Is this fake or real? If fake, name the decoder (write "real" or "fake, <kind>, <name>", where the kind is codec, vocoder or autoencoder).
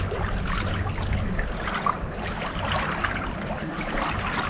real